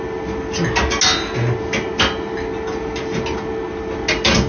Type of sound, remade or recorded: recorded